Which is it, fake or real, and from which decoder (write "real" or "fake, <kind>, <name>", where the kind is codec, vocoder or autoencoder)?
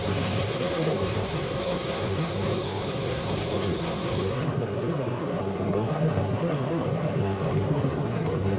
fake, codec, SNAC